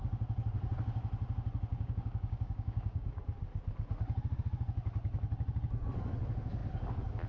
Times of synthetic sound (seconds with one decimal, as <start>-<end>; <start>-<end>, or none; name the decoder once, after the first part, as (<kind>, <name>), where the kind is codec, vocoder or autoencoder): 1.7-3.2 (codec, DAC)